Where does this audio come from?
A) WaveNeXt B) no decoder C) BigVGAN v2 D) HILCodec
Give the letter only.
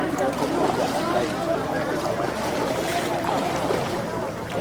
C